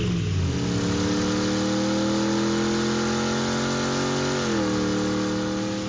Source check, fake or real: real